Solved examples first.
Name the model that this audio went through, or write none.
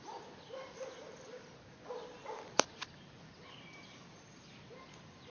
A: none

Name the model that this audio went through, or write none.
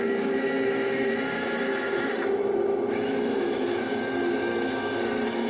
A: autoencoder, DAC-VAE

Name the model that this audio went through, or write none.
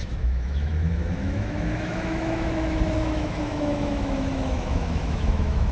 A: autoencoder, DAC-VAE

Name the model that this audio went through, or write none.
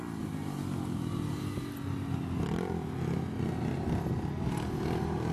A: none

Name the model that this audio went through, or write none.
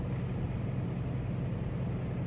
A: none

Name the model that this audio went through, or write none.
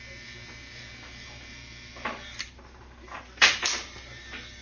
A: vocoder, BigVGAN v2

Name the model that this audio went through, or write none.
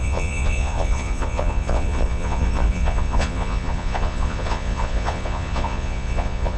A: vocoder, Vocos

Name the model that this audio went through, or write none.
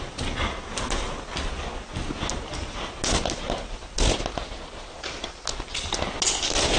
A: none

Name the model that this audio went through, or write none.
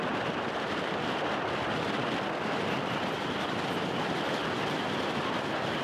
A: vocoder, BigVGAN v2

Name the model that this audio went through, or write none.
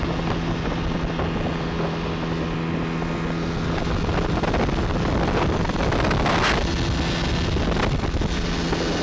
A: none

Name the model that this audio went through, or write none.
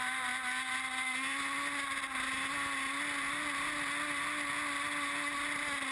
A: none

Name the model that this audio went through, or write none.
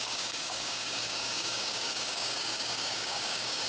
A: codec, DAC